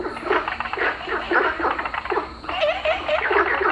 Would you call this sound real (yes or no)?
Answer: yes